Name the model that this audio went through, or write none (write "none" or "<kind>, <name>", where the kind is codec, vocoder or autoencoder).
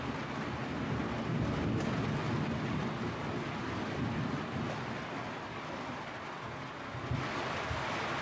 none